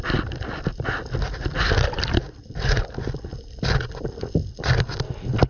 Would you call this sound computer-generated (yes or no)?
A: no